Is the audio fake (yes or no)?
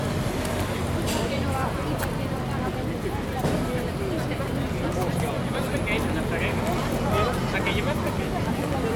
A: no